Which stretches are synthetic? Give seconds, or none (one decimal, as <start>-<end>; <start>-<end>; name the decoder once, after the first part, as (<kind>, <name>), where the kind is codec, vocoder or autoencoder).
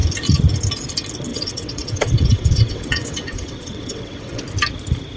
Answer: 1.3-4.4 (vocoder, WaveNeXt)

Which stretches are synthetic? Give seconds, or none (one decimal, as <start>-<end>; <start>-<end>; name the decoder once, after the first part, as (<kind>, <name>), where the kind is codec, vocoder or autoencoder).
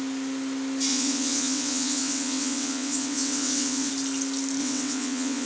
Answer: 0.9-3.9 (vocoder, WaveNeXt); 4.6-5.5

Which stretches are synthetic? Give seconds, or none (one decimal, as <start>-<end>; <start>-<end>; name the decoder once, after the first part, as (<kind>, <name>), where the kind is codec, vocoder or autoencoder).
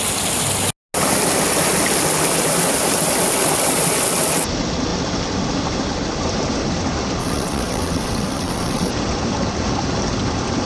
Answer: 7.2-8.9 (vocoder, WaveNeXt)